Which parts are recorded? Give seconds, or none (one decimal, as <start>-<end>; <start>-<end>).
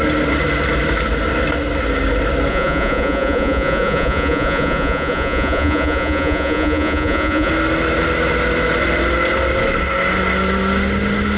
0.0-2.5; 7.5-11.4